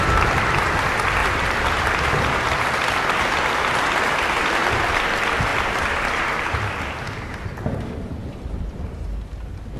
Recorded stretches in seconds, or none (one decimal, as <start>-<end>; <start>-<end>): 0.0-1.2; 1.9-5.5; 6.2-8.2; 8.8-9.8